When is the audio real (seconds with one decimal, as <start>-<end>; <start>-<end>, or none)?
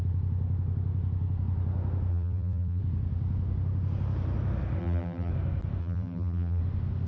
0.0-2.1; 2.8-4.8; 5.3-5.8; 6.6-7.1